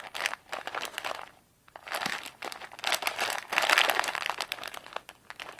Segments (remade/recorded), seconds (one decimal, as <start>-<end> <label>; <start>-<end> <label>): 0.0-5.6 recorded